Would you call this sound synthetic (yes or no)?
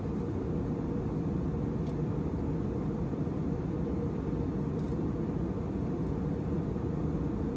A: no